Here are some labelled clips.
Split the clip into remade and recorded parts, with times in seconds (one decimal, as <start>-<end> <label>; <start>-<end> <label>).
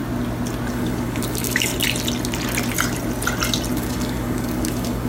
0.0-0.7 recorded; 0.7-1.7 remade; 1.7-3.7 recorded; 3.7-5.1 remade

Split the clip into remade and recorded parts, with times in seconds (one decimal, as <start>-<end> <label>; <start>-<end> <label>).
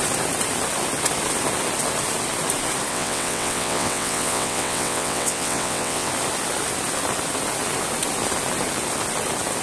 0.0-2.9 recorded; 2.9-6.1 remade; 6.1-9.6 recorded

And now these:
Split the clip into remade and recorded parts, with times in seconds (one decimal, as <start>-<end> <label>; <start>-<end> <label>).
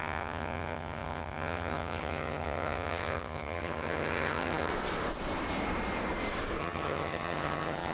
0.0-4.7 remade; 4.7-6.6 recorded; 6.6-7.9 remade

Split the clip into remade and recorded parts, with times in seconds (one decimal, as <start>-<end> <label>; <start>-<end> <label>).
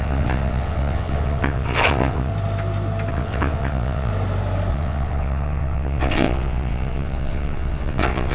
0.0-2.3 remade; 2.3-3.1 recorded; 3.1-4.1 remade; 4.1-4.7 recorded; 4.7-8.3 remade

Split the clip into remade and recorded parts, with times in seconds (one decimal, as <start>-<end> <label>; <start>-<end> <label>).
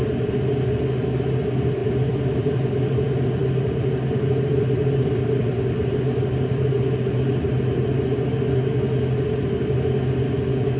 0.0-1.8 recorded; 1.8-6.7 remade; 6.7-10.8 recorded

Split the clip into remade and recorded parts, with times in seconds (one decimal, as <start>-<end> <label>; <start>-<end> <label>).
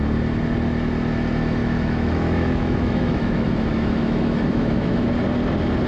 0.0-1.6 recorded; 1.6-5.1 remade; 5.1-5.9 recorded